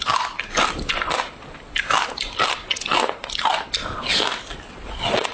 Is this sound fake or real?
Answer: real